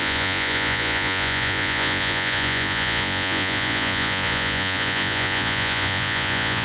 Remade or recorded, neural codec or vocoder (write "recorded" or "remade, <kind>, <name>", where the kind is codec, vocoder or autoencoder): remade, vocoder, Vocos